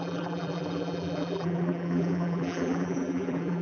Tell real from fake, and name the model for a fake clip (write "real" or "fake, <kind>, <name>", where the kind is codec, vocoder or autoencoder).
fake, vocoder, BigVGAN v2